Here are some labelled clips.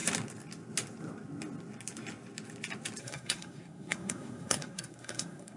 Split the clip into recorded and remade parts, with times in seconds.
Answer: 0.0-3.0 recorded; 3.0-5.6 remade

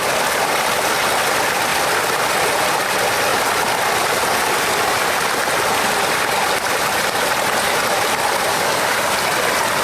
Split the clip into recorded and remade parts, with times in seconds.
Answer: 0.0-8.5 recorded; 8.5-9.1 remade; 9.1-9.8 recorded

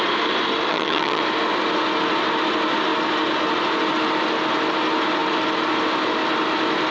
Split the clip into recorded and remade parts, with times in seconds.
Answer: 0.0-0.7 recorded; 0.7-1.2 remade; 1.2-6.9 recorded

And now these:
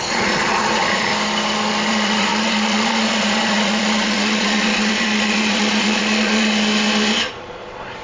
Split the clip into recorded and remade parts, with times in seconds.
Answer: 0.0-1.1 remade; 1.1-1.9 recorded; 1.9-6.5 remade; 6.5-7.3 recorded; 7.3-8.0 remade

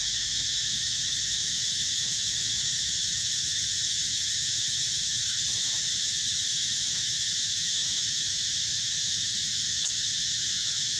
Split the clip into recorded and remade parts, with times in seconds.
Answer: 0.0-11.0 remade

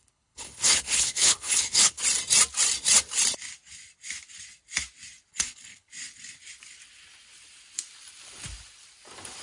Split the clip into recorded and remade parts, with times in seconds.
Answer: 0.0-2.0 remade; 2.0-5.3 recorded; 5.3-5.9 remade; 5.9-9.4 recorded

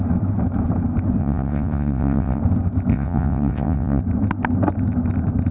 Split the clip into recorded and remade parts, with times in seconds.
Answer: 0.0-1.2 recorded; 1.2-2.4 remade; 2.4-2.9 recorded; 2.9-4.0 remade; 4.0-5.5 recorded

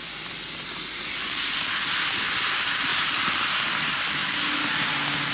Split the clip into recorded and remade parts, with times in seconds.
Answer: 0.0-1.1 remade; 1.1-2.9 recorded; 2.9-3.7 remade; 3.7-5.3 recorded